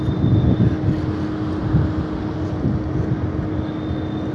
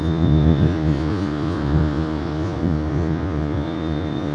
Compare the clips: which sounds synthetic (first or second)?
second